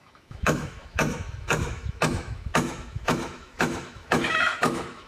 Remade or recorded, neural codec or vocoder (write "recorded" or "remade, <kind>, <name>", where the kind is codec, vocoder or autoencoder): remade, autoencoder, DAC-VAE